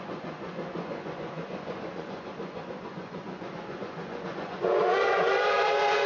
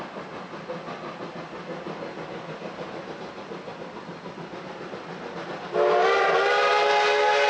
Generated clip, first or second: first